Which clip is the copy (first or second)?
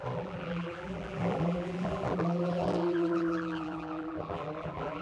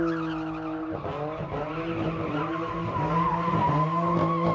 first